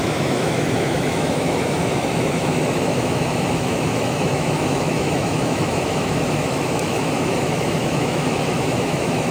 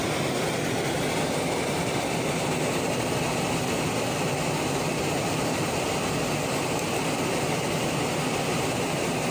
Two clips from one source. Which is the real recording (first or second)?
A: second